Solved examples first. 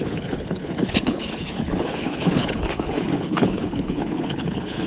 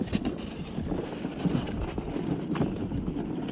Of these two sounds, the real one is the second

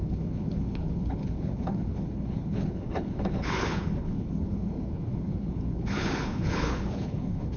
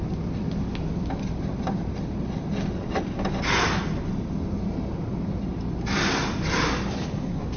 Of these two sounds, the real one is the second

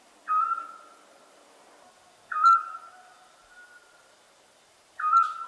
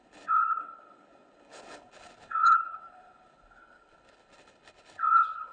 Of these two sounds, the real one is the first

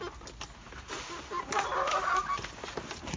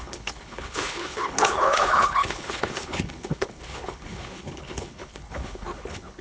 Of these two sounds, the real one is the first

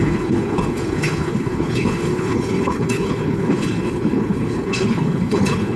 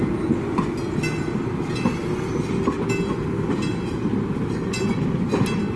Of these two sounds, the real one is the second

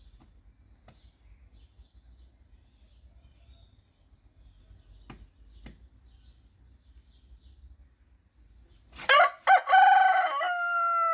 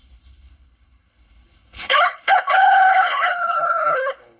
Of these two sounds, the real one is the first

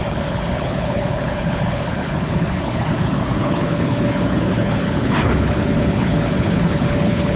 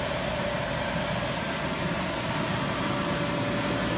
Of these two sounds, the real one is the second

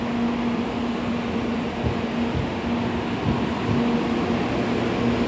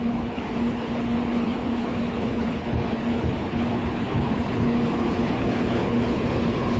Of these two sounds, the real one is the first